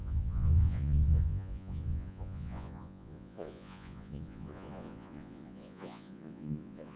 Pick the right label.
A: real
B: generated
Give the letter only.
B